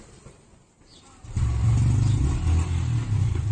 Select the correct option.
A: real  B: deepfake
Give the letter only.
A